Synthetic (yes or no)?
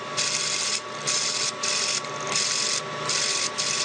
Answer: no